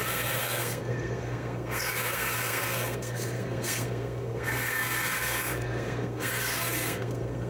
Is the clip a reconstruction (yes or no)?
yes